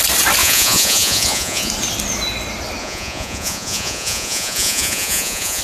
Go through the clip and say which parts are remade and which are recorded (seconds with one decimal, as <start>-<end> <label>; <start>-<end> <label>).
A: 0.0-0.4 recorded; 0.4-1.7 remade; 1.7-2.8 recorded; 2.8-5.6 remade

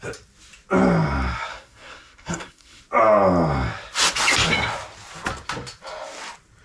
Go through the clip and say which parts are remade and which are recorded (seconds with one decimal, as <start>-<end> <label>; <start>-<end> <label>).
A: 0.0-1.5 recorded; 1.5-2.8 remade; 2.8-6.6 recorded

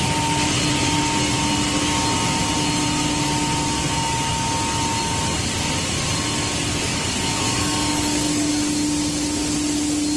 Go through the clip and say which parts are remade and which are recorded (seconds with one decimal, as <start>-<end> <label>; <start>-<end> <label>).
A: 0.0-6.9 recorded; 6.9-8.5 remade; 8.5-10.2 recorded

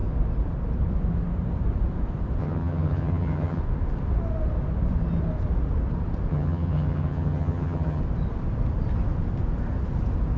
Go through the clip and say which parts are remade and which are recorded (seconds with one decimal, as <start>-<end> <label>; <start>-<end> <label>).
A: 0.0-2.4 recorded; 2.4-3.6 remade; 3.6-6.3 recorded; 6.3-8.0 remade; 8.0-10.4 recorded

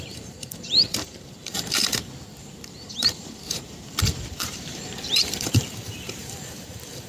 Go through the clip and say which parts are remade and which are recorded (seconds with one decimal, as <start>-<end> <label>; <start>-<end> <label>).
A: 0.0-1.8 remade; 1.8-2.4 recorded; 2.4-7.1 remade

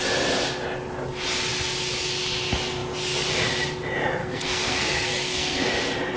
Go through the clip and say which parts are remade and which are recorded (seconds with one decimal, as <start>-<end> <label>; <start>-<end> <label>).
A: 0.0-4.2 recorded; 4.2-5.7 remade; 5.7-6.2 recorded

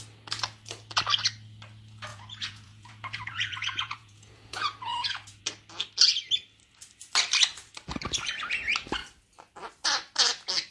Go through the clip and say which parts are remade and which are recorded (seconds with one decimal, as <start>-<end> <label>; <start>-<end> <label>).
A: 0.0-2.1 recorded; 2.1-5.4 remade; 5.4-10.7 recorded

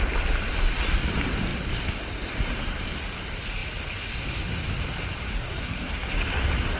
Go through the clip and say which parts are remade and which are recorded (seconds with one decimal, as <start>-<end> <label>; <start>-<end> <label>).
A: 0.0-5.3 recorded; 5.3-6.1 remade; 6.1-6.8 recorded